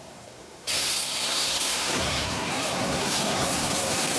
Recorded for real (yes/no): no